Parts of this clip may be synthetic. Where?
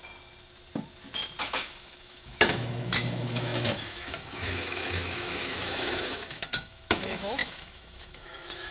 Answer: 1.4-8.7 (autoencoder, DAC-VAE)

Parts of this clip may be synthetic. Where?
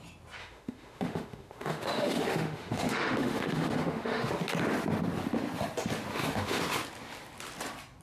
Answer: 0.4-4.3 (autoencoder, DAC-VAE); 6.1-6.6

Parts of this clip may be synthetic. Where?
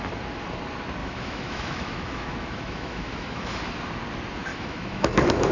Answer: 1.0-3.6 (autoencoder, DAC-VAE); 4.5-5.5